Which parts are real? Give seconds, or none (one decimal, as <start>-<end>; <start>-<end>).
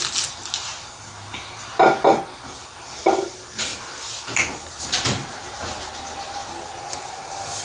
0.0-7.6